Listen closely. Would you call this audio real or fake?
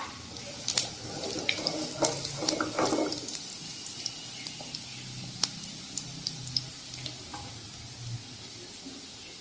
real